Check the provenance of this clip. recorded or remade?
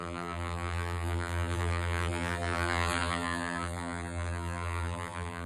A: remade